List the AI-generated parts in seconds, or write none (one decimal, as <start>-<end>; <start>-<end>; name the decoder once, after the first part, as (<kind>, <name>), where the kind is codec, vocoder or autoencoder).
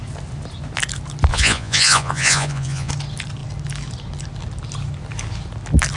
1.3-2.9 (vocoder, Vocos)